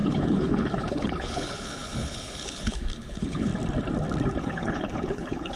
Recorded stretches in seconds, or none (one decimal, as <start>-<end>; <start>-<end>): 3.5-4.4